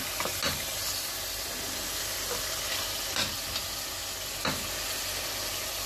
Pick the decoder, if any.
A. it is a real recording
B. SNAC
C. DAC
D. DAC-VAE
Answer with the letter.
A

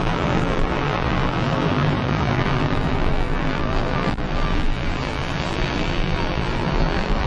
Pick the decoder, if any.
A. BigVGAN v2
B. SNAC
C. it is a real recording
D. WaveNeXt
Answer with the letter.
A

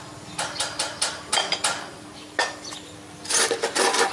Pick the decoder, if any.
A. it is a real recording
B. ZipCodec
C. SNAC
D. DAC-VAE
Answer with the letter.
A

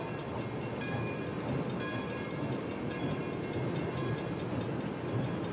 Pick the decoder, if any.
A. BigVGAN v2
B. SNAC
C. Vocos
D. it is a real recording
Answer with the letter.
D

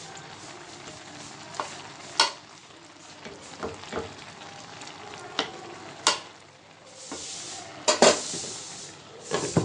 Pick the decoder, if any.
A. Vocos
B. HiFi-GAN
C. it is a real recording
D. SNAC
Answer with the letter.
C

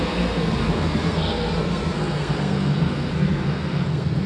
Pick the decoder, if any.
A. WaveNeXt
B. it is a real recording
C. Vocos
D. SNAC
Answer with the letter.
D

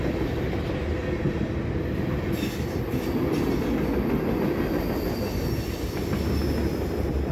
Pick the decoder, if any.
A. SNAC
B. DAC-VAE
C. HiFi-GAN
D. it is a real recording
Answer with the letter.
D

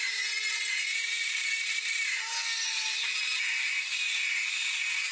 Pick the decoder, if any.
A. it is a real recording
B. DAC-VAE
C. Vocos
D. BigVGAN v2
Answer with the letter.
A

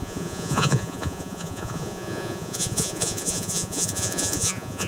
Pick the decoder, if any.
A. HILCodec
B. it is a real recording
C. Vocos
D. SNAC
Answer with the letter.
C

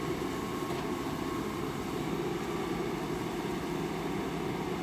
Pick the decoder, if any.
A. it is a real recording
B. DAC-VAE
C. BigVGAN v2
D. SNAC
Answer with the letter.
A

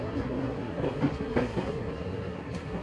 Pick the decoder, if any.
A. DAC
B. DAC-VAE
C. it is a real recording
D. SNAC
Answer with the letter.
D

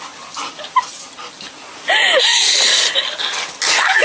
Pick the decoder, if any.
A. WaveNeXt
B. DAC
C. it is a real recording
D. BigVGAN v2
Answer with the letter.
C